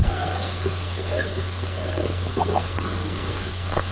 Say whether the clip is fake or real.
fake